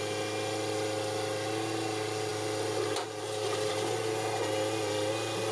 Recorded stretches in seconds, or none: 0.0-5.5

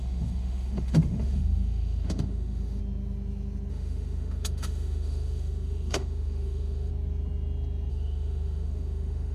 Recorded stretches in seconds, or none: 2.8-3.7; 6.9-7.9

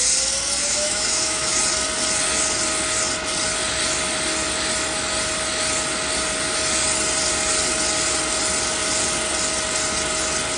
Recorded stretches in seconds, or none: 0.0-0.6; 1.6-10.6

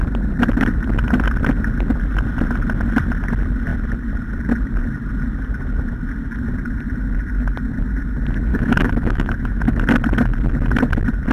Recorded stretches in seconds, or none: 0.0-8.5; 9.8-11.3

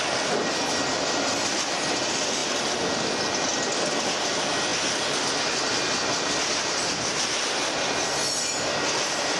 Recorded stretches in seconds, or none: 0.0-9.4

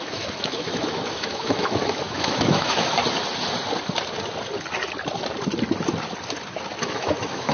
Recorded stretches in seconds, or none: 3.0-6.8

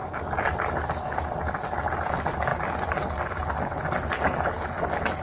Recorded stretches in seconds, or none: 0.0-5.2

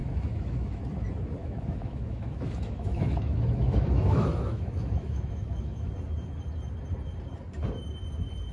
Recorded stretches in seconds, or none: 0.8-1.4; 5.9-8.5